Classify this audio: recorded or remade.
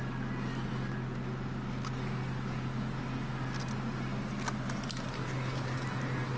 recorded